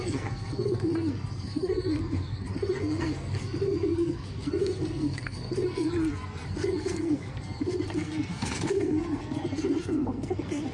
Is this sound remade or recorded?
remade